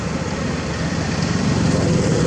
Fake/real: real